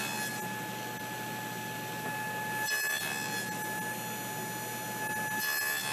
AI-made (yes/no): no